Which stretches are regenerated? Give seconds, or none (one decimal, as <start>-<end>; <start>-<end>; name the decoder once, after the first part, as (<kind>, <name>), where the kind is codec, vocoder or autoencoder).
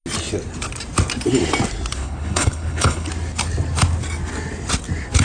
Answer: 2.0-3.1 (codec, HILCodec)